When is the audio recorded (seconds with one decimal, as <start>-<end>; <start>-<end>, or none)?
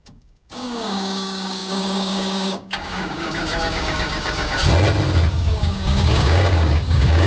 4.6-5.3